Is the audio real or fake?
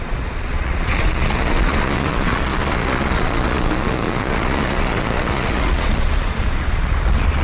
fake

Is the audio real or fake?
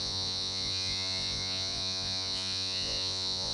fake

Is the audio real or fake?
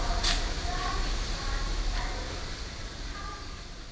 real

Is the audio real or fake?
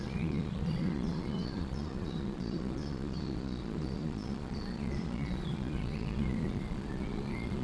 fake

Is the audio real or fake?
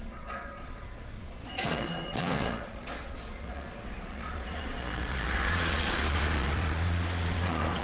fake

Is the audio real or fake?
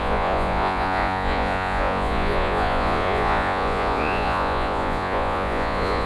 fake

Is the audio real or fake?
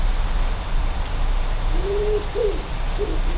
real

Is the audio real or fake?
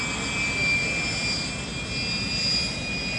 real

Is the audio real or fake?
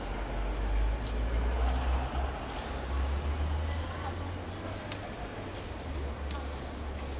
real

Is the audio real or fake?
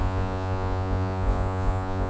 fake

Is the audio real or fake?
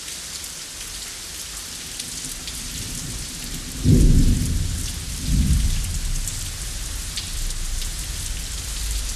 real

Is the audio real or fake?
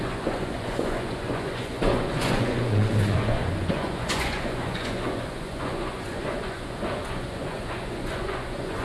fake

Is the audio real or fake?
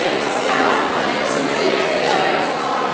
fake